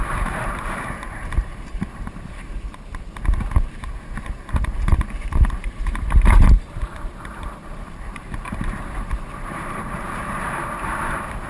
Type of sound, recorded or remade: remade